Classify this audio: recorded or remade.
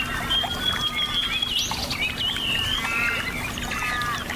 recorded